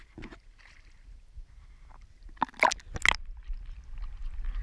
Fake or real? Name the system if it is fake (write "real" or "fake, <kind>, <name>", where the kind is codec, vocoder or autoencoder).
real